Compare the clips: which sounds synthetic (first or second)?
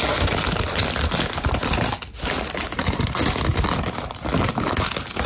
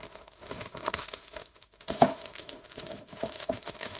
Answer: second